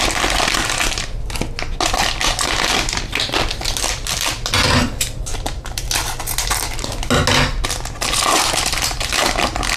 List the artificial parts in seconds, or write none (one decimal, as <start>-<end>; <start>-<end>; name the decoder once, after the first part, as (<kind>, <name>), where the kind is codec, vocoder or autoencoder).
5.3-5.8 (vocoder, BigVGAN v2)